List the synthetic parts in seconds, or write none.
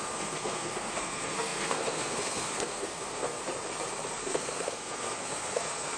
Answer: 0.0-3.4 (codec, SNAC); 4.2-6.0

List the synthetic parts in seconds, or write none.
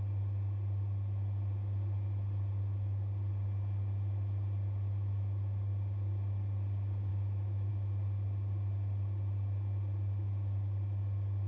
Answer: 7.1-7.7 (autoencoder, DAC-VAE)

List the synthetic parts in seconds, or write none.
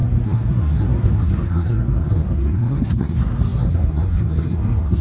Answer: 0.0-5.0 (codec, SNAC)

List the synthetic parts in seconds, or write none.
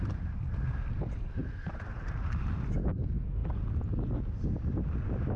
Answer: none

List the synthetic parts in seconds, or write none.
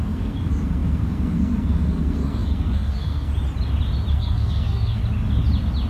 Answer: 0.0-3.3 (codec, SNAC); 4.1-5.0